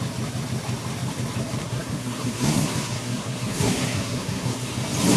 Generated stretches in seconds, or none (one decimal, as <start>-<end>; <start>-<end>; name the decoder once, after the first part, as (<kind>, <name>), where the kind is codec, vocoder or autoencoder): 1.6-4.7 (codec, SNAC)